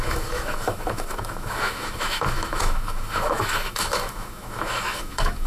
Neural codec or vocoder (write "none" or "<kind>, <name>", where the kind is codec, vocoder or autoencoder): autoencoder, DAC-VAE